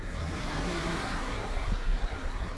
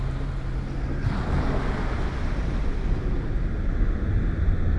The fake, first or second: first